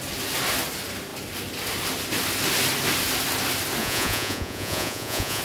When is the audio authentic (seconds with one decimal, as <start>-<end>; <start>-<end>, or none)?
0.0-3.8